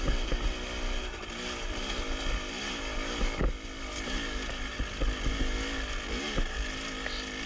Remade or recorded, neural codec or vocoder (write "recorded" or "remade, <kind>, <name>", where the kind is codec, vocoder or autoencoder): recorded